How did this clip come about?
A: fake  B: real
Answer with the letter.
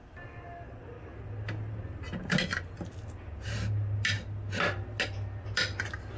B